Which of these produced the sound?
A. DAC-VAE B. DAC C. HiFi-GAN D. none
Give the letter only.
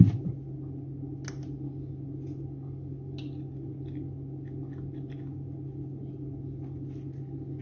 D